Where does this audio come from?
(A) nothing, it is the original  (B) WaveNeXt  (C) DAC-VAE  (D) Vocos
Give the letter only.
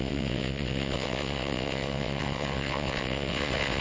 B